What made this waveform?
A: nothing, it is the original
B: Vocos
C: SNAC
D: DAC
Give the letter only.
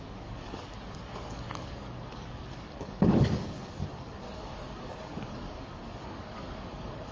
D